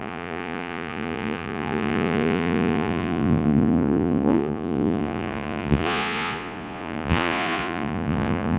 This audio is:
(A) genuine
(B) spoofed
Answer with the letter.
B